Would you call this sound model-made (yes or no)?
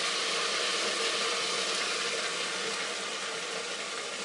no